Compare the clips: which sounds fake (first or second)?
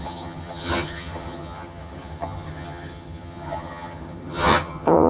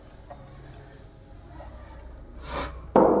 first